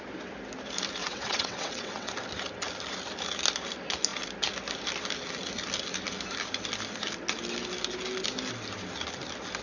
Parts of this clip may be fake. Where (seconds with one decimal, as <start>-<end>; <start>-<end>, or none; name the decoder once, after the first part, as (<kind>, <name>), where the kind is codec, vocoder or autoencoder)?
1.0-2.1 (vocoder, WaveNeXt)